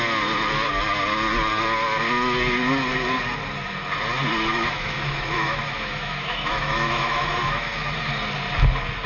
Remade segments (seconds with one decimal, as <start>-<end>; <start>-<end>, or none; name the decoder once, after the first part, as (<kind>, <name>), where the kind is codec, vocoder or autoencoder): 4.5-7.9 (autoencoder, DAC-VAE)